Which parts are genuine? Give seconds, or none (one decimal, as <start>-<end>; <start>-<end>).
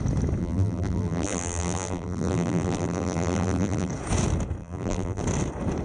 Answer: 0.0-0.4; 3.9-4.6; 5.2-5.8